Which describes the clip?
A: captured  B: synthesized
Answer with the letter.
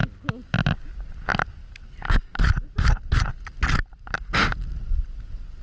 A